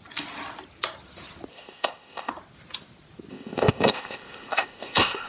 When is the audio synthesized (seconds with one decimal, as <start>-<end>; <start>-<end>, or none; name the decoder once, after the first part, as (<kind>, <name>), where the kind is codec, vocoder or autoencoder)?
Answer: 1.5-2.3 (codec, ZipCodec); 3.3-5.3